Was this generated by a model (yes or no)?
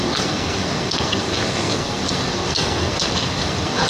yes